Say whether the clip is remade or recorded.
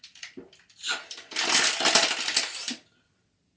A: recorded